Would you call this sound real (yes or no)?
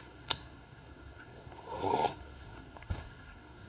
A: no